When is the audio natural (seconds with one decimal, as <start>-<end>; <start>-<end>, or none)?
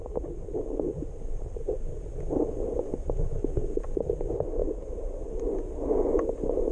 0.0-2.9; 3.4-4.6; 5.3-6.7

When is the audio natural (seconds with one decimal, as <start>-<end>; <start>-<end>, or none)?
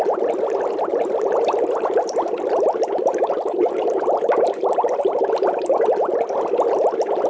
0.0-0.9; 5.3-7.3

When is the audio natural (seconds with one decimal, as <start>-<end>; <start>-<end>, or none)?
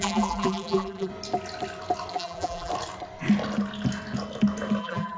1.1-2.1; 2.7-4.8